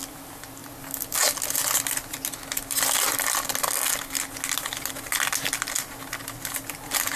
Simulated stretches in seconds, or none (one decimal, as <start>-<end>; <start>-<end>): none